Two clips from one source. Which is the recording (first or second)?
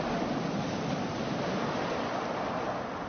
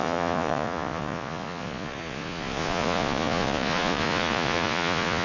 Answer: first